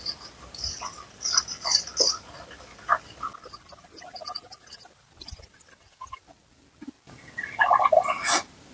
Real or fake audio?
real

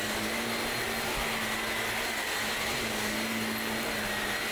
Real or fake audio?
real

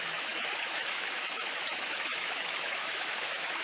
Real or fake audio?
fake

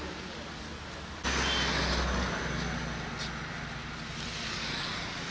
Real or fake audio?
real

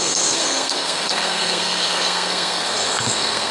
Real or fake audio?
fake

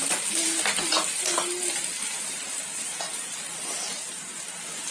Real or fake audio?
real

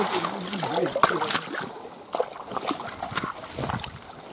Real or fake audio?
real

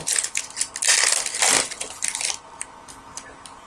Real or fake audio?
real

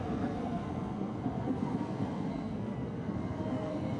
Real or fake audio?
fake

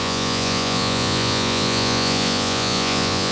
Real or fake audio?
fake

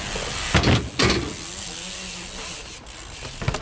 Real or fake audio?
real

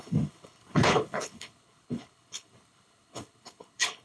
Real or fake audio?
fake